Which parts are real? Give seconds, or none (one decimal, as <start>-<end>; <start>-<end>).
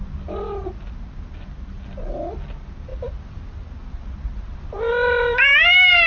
0.0-6.1